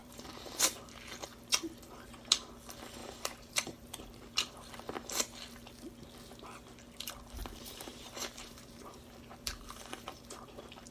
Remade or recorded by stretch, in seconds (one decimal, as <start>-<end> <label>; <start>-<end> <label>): 0.0-0.8 remade; 0.8-3.0 recorded; 3.0-4.7 remade; 4.7-7.4 recorded; 7.4-10.9 remade